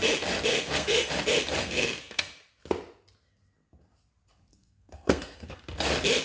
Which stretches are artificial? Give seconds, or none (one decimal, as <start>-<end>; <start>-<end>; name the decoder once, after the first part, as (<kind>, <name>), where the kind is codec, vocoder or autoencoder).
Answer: 0.5-1.1 (codec, SNAC); 1.6-2.3; 4.5-5.6